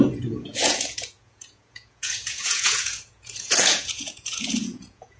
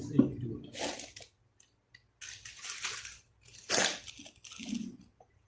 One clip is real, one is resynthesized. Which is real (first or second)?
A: second